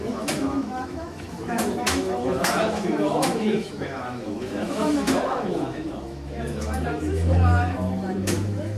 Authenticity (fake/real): fake